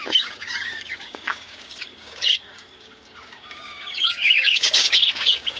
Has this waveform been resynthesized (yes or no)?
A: yes